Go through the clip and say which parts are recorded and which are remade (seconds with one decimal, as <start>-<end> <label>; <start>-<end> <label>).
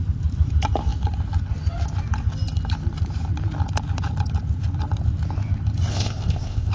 0.0-5.9 recorded; 5.9-6.7 remade